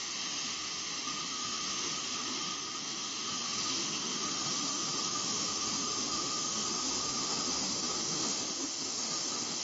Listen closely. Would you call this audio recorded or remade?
remade